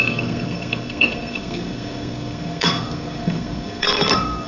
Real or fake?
fake